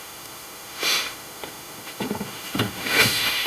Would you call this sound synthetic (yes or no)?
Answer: yes